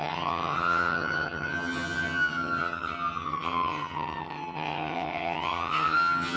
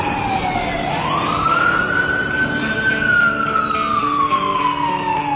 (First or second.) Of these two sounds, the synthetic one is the first